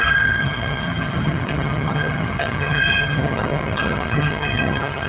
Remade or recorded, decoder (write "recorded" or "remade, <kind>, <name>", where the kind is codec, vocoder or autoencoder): remade, vocoder, HiFi-GAN